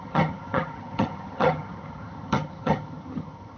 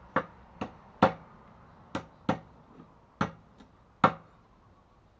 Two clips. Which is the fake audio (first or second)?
first